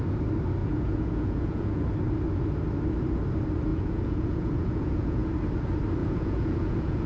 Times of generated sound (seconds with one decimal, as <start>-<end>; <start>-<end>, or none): 0.6-1.8; 3.7-5.3; 6.0-7.1